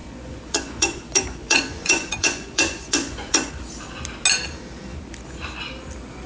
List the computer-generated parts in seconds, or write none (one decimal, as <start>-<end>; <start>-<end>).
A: 0.0-3.5